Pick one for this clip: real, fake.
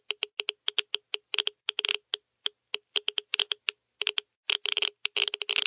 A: real